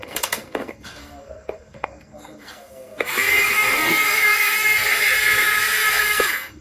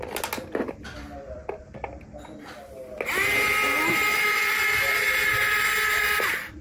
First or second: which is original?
second